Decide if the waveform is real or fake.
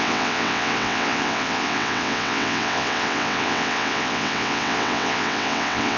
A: fake